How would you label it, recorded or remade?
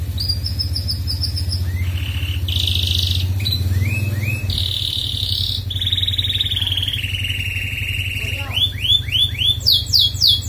recorded